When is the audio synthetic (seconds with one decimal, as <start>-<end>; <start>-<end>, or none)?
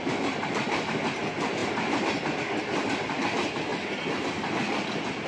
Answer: none